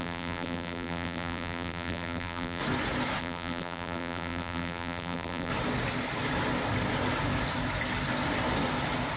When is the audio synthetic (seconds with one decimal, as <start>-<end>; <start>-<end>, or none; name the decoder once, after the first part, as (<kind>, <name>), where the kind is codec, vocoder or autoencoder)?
0.0-2.6 (vocoder, BigVGAN v2); 3.2-5.5